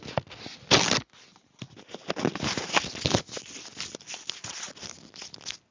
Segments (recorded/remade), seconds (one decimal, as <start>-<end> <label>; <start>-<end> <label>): 0.0-5.7 recorded